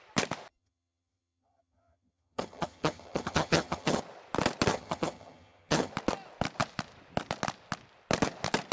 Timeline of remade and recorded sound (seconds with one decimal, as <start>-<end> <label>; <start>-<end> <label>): 0.0-0.5 recorded; 0.5-4.0 remade; 4.0-4.7 recorded; 4.7-5.9 remade; 5.9-8.7 recorded